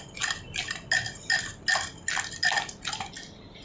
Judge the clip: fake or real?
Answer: real